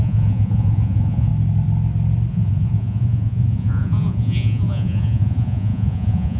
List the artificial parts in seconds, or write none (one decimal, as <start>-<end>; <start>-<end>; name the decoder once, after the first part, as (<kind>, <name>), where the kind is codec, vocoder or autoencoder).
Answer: 0.0-1.3 (vocoder, Vocos); 2.3-6.4